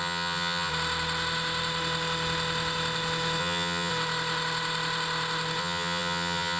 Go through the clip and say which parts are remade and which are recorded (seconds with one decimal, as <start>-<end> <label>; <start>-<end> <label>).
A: 0.0-0.7 remade; 0.7-3.4 recorded; 3.4-3.9 remade; 3.9-5.6 recorded; 5.6-6.6 remade